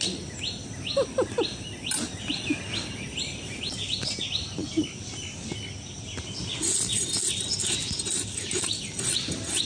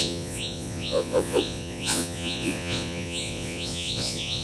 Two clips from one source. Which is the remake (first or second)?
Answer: second